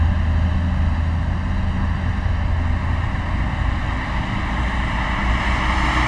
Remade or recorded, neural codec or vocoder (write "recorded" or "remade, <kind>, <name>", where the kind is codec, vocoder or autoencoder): recorded